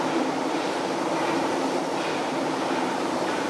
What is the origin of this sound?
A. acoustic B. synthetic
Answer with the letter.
B